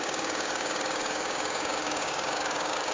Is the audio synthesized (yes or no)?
yes